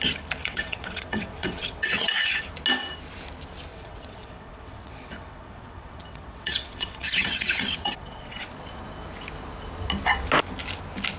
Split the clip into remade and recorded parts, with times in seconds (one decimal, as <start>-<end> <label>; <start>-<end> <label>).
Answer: 0.0-0.4 recorded; 0.4-2.4 remade; 2.4-3.7 recorded; 3.7-8.5 remade; 8.5-11.2 recorded